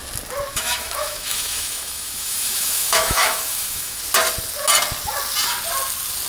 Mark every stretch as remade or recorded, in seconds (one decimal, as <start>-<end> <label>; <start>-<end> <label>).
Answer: 0.0-0.5 recorded; 0.5-4.0 remade; 4.0-6.3 recorded